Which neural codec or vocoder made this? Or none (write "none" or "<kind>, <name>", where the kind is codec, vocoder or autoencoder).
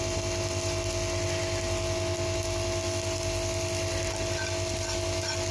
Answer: none